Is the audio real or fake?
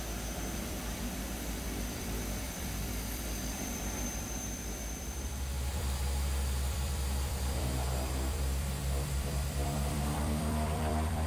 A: fake